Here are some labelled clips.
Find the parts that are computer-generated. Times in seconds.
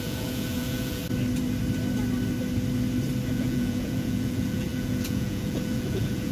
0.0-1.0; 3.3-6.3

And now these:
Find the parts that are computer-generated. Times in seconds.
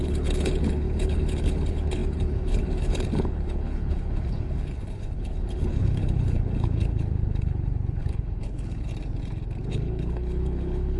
0.0-8.9; 9.7-11.0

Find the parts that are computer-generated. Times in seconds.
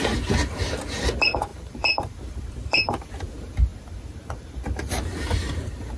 1.5-3.1; 3.7-5.0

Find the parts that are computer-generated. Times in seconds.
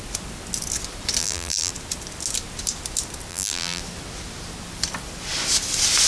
1.2-1.7; 3.3-3.8